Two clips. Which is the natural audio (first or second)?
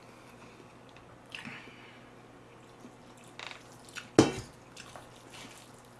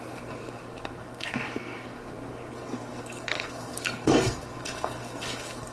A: first